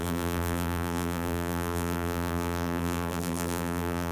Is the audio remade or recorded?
remade